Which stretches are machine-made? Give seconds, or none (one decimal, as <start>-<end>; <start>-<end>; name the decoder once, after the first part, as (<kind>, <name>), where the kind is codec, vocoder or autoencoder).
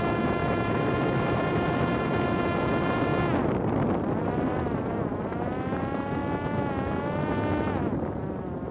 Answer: 0.0-3.1 (vocoder, BigVGAN v2); 4.2-6.2; 7.8-8.7